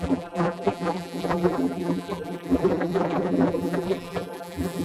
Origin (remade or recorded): remade